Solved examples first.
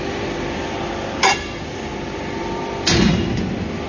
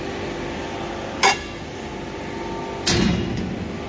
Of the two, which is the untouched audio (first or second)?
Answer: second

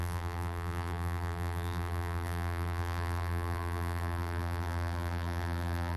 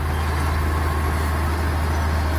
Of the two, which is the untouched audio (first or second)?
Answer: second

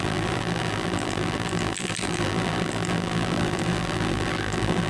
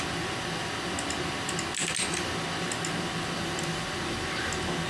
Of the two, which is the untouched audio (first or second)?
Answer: second